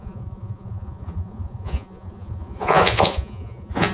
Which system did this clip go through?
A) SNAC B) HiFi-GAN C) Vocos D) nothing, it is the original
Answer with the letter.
C